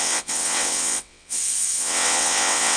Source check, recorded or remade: remade